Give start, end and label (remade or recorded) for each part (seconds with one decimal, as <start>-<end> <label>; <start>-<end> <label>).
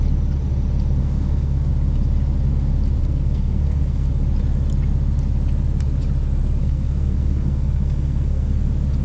0.0-1.0 recorded; 1.0-1.7 remade; 1.7-3.0 recorded; 3.0-4.1 remade; 4.1-6.6 recorded; 6.6-8.6 remade; 8.6-9.0 recorded